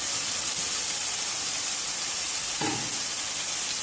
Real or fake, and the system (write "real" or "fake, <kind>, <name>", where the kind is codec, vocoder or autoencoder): real